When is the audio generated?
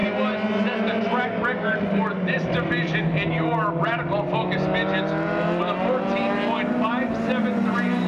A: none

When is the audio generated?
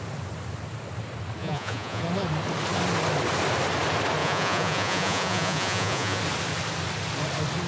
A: 1.4-2.0 (vocoder, Vocos); 4.2-6.2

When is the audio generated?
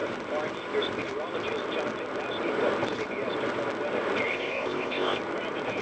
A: 4.3-5.2 (codec, ZipCodec)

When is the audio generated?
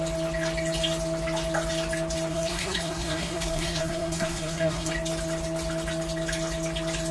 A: 2.3-4.9 (codec, SNAC)